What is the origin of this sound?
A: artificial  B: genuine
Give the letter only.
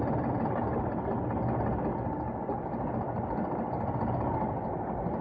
B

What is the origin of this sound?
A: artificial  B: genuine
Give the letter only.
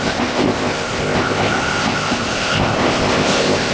A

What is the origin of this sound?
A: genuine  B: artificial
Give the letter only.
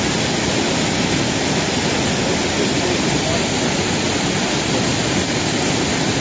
A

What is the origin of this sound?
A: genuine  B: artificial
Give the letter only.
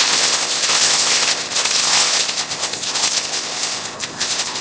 B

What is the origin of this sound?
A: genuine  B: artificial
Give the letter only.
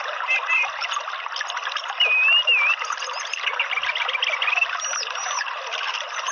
A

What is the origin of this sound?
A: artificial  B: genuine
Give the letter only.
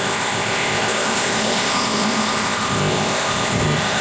A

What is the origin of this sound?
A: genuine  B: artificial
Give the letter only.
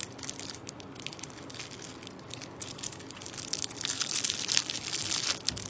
A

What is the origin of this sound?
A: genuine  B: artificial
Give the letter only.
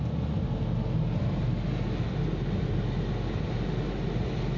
A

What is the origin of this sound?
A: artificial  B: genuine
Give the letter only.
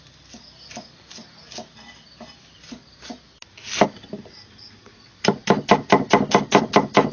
B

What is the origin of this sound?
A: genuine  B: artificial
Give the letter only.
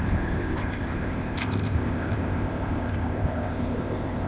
B